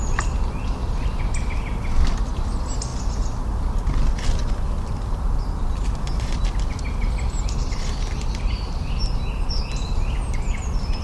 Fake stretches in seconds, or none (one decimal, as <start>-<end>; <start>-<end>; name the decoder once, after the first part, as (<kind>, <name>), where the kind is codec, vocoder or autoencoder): none